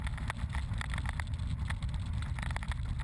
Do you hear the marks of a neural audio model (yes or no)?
no